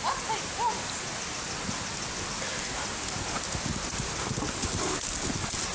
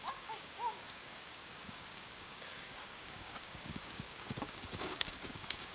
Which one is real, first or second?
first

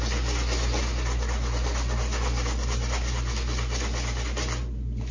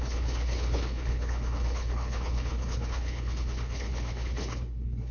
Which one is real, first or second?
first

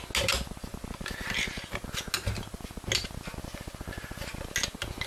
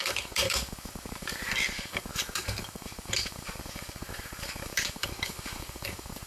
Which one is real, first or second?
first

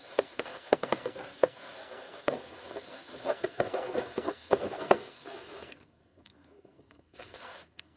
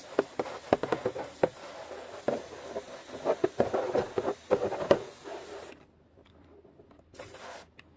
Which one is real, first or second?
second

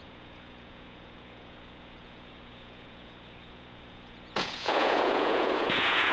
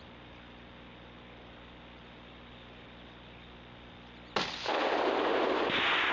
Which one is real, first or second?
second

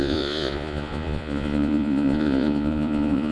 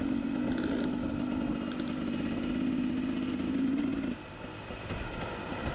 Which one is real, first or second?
second